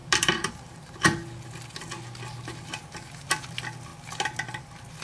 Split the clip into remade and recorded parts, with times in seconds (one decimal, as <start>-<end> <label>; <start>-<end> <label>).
0.0-0.5 remade; 0.5-5.0 recorded